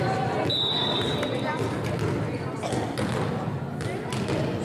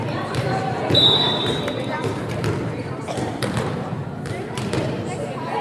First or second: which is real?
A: first